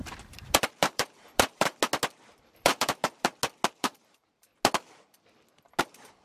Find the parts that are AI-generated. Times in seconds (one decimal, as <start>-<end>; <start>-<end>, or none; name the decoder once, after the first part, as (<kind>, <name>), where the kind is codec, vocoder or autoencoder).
0.0-1.7 (vocoder, BigVGAN v2); 2.4-3.0; 3.7-4.5; 5.8-6.2